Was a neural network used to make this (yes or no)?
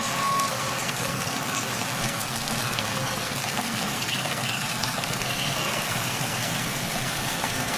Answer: yes